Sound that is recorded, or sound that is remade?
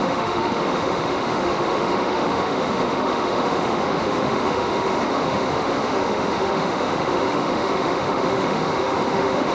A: remade